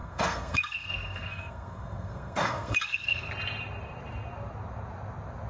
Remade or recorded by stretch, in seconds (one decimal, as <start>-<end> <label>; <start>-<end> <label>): 0.0-3.3 remade; 3.3-5.5 recorded